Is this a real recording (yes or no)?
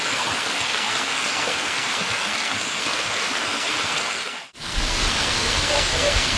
no